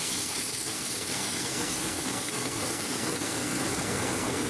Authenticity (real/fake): fake